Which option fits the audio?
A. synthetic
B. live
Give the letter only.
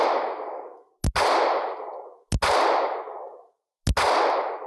B